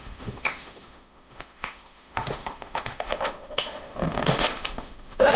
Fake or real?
fake